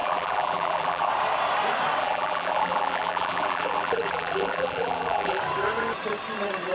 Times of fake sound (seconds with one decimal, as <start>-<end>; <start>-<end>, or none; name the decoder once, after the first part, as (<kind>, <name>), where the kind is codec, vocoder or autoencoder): 0.0-1.1 (vocoder, BigVGAN v2); 2.0-5.4